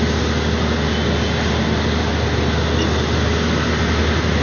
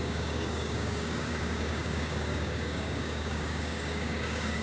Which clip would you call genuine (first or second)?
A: first